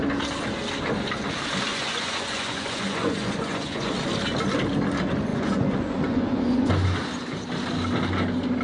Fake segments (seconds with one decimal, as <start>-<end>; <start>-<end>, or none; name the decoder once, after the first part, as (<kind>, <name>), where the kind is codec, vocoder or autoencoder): 1.7-3.9 (vocoder, Vocos); 5.3-6.7